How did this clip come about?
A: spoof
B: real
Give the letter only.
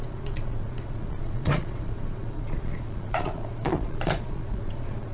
A